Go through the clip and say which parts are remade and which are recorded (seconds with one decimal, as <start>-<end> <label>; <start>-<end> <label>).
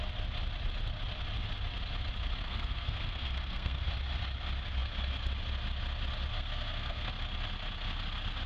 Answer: 0.0-2.4 recorded; 2.4-3.9 remade; 3.9-6.3 recorded; 6.3-7.1 remade; 7.1-8.5 recorded